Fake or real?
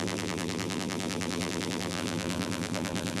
fake